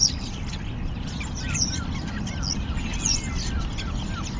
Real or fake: real